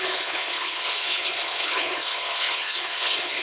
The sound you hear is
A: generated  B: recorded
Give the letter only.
A